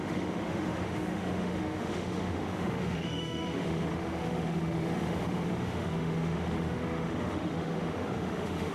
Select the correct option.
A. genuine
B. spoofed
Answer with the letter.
B